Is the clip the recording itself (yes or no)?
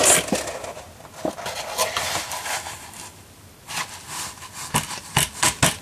yes